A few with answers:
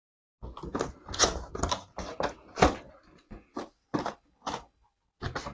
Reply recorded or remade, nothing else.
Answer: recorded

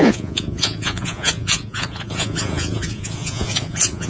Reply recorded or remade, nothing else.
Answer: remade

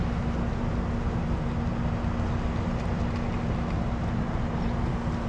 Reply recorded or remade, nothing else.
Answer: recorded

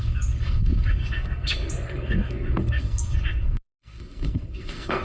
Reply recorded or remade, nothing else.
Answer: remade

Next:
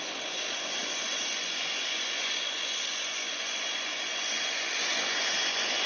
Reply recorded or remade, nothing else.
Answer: remade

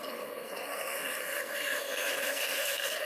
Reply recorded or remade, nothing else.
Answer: remade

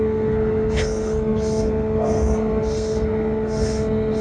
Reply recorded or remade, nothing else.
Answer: remade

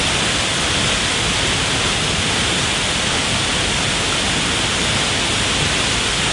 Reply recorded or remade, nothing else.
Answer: recorded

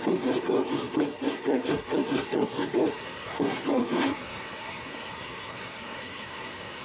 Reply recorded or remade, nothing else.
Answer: remade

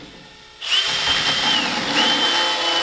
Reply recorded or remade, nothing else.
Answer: recorded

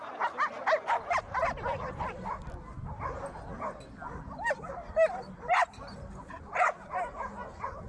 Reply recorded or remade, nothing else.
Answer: recorded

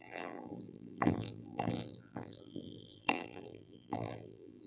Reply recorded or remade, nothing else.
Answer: remade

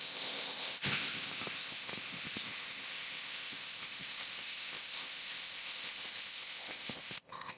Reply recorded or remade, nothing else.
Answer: remade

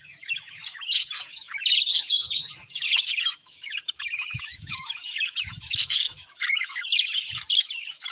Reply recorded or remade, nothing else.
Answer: remade